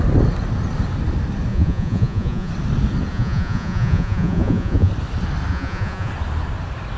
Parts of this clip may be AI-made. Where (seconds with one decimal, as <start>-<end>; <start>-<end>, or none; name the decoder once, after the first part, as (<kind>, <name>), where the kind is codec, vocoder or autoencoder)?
1.5-2.5 (vocoder, Vocos); 3.1-4.9; 5.5-6.1